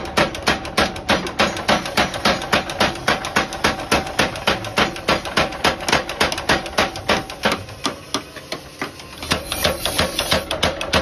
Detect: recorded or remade recorded